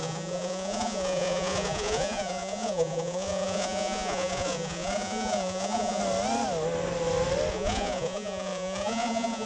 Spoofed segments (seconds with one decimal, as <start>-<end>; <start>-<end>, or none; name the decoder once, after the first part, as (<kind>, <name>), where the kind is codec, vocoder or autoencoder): 0.0-6.0 (vocoder, Vocos); 7.5-9.5